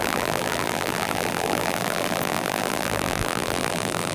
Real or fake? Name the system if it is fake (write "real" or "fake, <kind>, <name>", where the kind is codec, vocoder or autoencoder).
fake, vocoder, BigVGAN v2